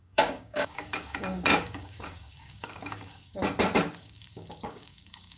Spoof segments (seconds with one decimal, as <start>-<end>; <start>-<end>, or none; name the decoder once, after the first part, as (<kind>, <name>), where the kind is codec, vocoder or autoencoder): 0.0-3.4 (codec, DAC); 4.0-5.4